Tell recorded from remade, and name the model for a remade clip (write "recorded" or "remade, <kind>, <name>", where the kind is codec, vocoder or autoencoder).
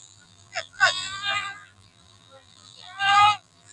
remade, vocoder, BigVGAN v2